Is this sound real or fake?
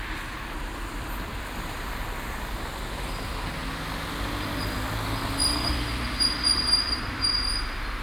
real